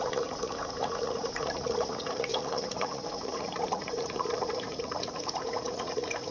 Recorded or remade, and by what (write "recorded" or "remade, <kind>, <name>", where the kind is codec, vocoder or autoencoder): remade, vocoder, Vocos